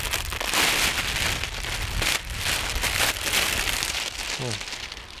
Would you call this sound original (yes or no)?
yes